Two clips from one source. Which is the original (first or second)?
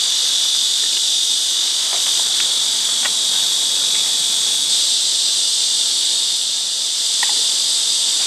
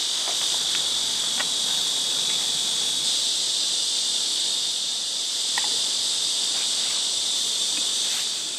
first